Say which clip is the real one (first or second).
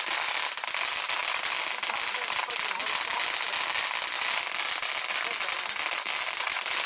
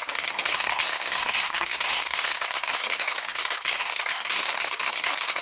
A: first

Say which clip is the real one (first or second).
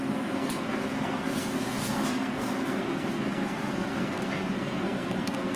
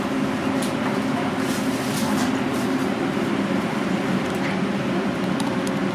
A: second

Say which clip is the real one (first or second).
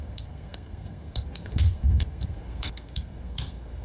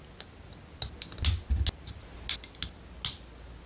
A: second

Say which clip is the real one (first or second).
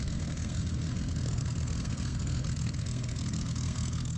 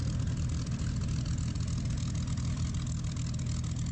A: second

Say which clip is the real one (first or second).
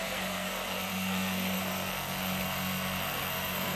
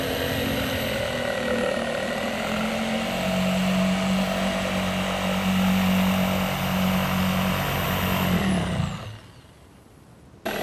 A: second